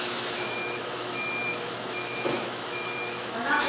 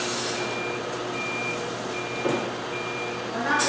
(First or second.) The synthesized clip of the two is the first